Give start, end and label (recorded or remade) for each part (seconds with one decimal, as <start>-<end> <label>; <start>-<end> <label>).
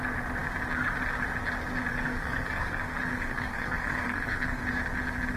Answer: 0.0-1.9 recorded; 1.9-4.6 remade; 4.6-5.4 recorded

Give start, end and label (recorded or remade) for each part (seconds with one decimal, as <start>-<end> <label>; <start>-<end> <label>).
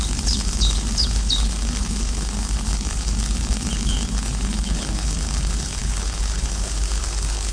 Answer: 0.0-7.5 remade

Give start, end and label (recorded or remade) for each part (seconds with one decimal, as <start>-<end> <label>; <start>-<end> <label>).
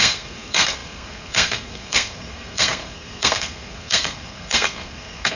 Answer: 0.0-5.4 remade